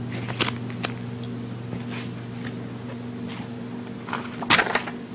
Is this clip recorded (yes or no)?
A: yes